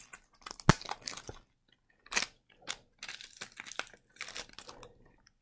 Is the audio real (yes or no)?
yes